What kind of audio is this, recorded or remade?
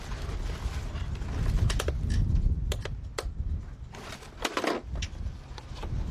recorded